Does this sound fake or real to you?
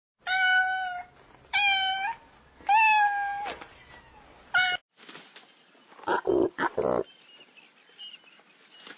real